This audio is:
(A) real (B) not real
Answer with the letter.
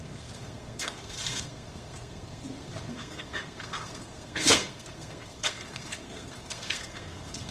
B